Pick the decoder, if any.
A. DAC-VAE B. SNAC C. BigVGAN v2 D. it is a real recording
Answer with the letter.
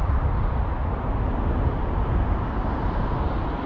D